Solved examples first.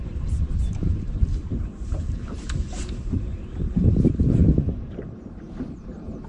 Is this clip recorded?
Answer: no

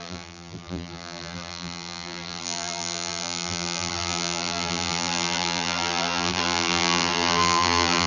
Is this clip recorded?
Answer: no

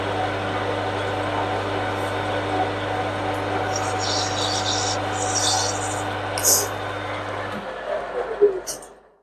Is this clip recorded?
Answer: yes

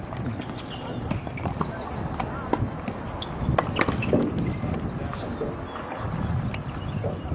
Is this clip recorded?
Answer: yes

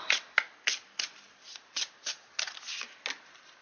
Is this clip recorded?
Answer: yes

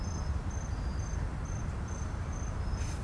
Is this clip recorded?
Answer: yes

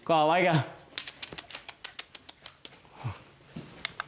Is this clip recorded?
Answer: yes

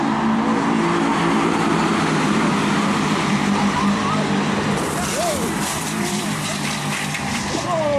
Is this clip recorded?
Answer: no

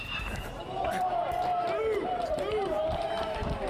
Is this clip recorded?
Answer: no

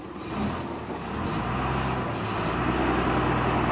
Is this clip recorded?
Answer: yes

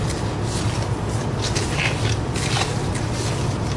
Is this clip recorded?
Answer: yes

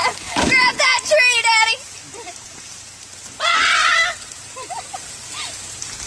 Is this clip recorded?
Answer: yes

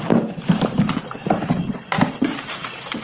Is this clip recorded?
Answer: no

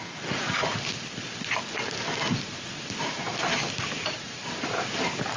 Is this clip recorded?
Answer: no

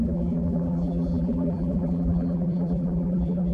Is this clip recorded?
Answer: no